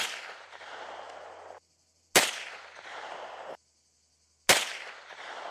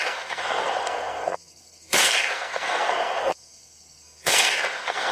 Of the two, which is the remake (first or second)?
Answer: second